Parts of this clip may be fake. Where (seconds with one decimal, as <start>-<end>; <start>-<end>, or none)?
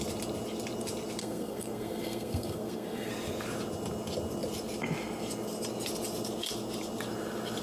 1.2-3.1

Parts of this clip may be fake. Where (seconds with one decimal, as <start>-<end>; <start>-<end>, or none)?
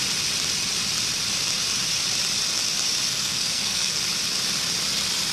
3.1-4.0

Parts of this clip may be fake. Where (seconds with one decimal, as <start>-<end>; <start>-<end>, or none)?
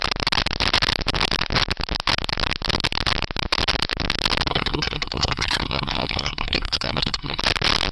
4.5-7.4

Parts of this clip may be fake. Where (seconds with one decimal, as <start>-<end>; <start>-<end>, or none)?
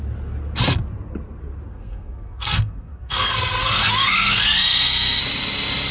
1.7-5.2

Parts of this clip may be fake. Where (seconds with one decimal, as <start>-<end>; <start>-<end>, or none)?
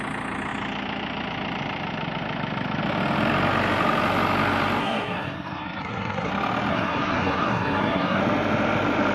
4.8-6.3; 6.7-8.2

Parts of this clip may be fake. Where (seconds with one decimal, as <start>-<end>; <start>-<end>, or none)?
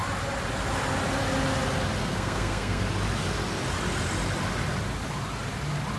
2.0-2.8